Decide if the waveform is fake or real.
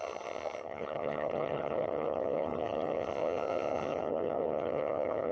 fake